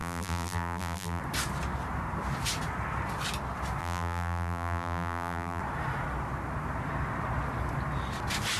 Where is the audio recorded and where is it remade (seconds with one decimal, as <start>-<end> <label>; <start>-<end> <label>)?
0.0-1.2 remade; 1.2-3.8 recorded; 3.8-5.6 remade; 5.6-8.6 recorded

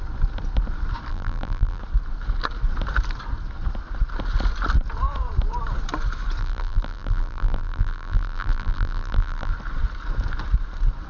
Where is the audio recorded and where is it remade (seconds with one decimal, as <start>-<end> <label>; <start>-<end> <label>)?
0.0-1.1 recorded; 1.1-1.8 remade; 1.8-6.4 recorded; 6.4-9.5 remade; 9.5-11.1 recorded

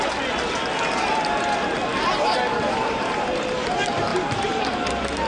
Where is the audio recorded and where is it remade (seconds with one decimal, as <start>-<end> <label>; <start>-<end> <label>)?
0.0-1.9 recorded; 1.9-3.5 remade; 3.5-4.1 recorded; 4.1-4.6 remade; 4.6-5.3 recorded

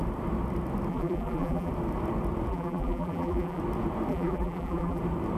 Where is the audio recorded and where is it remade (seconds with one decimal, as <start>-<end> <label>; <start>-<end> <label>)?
0.0-0.9 recorded; 0.9-1.7 remade; 1.7-2.5 recorded; 2.5-3.6 remade; 3.6-4.1 recorded; 4.1-5.0 remade; 5.0-5.4 recorded

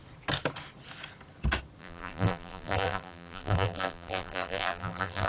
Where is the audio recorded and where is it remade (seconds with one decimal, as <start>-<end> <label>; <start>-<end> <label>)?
0.0-1.8 recorded; 1.8-5.3 remade